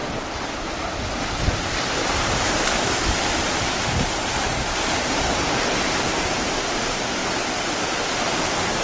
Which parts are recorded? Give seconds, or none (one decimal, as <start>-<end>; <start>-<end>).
0.0-2.0; 7.2-8.1